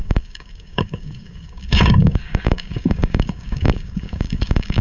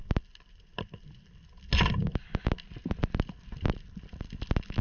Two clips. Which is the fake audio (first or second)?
first